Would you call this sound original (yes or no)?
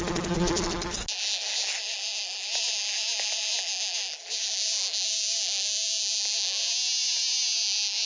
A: yes